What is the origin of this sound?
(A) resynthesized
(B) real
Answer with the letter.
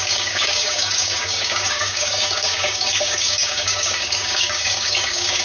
A